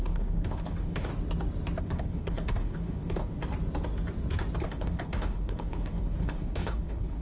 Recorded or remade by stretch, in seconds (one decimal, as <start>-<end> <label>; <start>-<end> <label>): 0.0-1.1 remade; 1.1-1.8 recorded; 1.8-3.4 remade; 3.4-4.6 recorded; 4.6-7.2 remade